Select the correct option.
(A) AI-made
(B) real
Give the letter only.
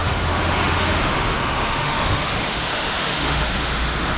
A